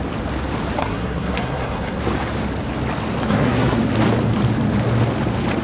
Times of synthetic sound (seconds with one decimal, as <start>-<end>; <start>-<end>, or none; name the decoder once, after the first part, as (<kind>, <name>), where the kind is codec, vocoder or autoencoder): 0.8-2.0 (codec, SNAC); 3.3-3.8